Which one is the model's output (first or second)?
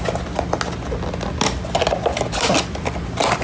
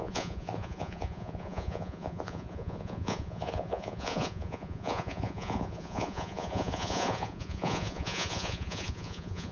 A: second